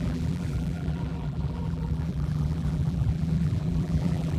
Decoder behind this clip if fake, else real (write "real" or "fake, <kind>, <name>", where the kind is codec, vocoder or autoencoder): fake, vocoder, BigVGAN v2